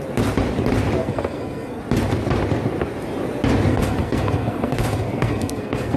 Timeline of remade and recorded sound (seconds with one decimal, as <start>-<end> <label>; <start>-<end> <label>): 0.0-1.0 recorded; 1.0-1.8 remade; 1.8-3.7 recorded; 3.7-6.0 remade